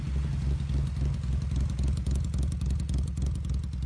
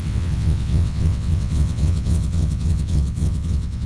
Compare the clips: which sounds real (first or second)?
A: first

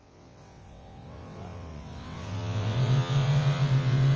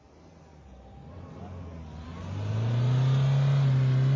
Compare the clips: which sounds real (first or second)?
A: second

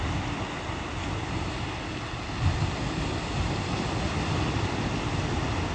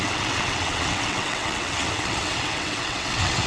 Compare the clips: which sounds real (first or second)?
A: first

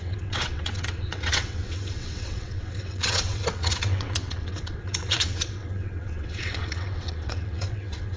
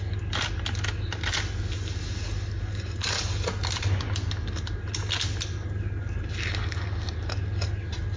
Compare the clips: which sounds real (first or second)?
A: second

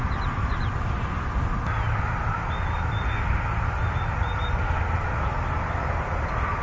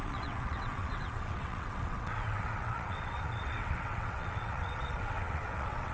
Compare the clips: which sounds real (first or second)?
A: first